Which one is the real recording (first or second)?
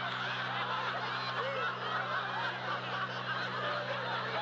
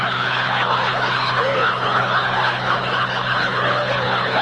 first